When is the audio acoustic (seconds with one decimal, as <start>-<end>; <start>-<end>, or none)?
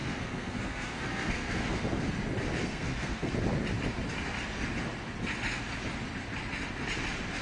2.1-2.6; 3.3-7.4